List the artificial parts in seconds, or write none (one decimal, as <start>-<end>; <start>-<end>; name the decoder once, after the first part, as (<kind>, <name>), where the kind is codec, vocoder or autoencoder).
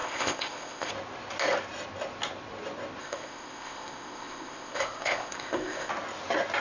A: 0.0-0.9 (codec, ZipCodec); 3.0-5.9